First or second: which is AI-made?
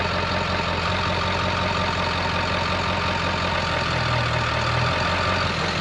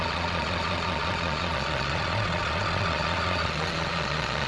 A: second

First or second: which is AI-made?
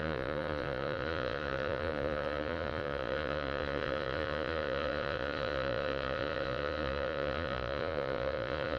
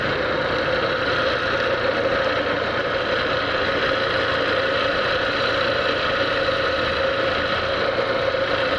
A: first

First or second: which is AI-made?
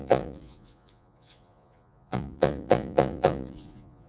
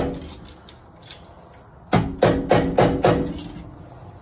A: first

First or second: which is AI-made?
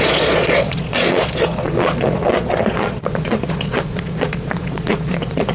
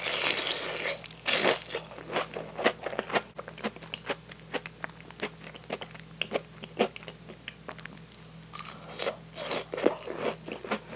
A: first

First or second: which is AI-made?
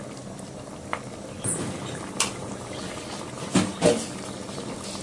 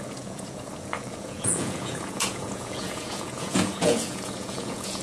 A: second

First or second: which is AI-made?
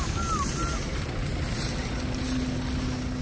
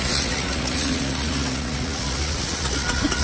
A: second